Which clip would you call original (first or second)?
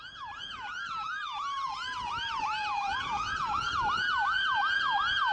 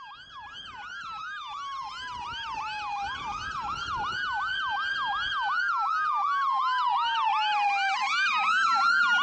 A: second